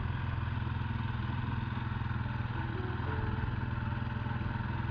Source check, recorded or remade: recorded